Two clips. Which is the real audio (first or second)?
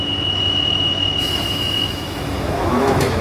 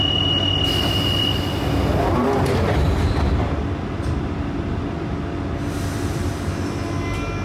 second